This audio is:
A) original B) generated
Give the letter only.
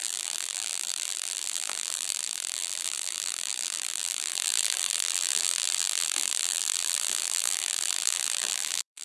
B